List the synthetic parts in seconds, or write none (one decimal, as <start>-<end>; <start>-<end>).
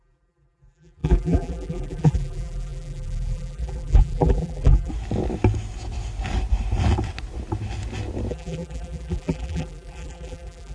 0.0-4.9; 8.3-10.7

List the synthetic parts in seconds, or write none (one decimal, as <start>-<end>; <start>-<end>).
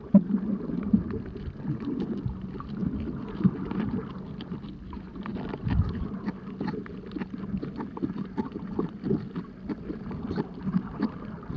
none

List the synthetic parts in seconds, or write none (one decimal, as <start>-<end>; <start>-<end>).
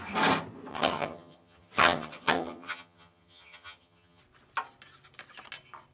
0.7-4.2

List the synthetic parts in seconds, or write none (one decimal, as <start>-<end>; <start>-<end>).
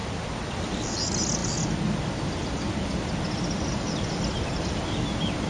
none